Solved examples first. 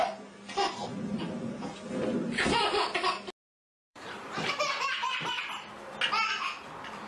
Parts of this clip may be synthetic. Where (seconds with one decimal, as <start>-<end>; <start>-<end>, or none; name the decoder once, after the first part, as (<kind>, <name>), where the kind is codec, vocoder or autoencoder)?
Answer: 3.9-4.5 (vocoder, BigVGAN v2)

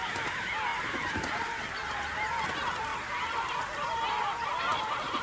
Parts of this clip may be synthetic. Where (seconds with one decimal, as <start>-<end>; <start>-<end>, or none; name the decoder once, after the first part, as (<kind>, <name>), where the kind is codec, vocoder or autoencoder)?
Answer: none

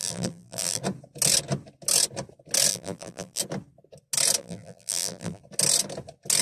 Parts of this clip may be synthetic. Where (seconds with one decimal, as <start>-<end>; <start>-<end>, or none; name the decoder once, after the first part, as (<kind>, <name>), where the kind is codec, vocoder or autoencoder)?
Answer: 0.0-0.8 (vocoder, BigVGAN v2); 2.7-3.4; 4.4-5.4